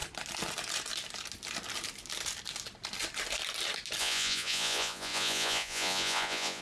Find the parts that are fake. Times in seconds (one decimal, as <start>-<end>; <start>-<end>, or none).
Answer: 4.0-6.6